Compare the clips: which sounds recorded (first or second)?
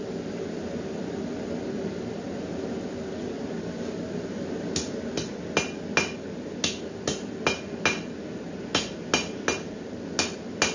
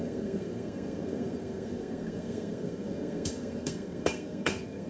first